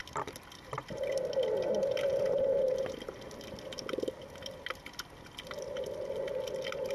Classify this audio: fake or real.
real